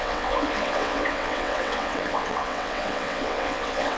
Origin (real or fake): fake